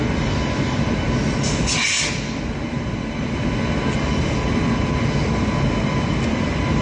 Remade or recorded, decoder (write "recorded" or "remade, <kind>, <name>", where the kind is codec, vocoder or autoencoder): recorded